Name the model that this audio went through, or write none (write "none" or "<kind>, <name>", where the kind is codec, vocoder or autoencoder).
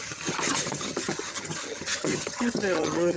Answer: vocoder, HiFi-GAN